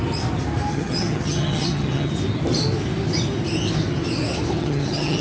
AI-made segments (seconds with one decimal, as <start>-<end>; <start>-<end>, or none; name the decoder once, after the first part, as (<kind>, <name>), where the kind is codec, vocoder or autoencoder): 0.7-2.1 (vocoder, HiFi-GAN); 4.6-5.2